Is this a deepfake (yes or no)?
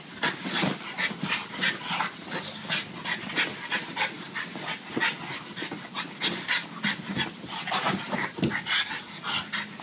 no